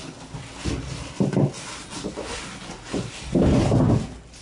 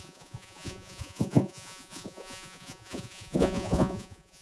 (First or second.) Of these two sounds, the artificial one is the second